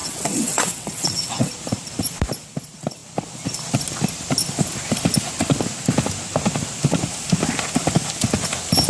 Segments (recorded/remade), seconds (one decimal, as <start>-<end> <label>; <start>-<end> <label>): 0.0-1.5 remade; 1.5-8.9 recorded